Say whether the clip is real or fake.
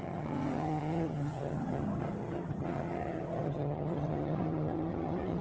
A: fake